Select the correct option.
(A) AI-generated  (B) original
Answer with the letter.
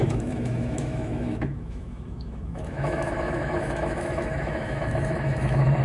A